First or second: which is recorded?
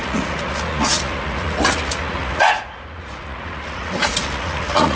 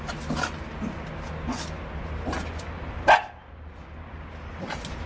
second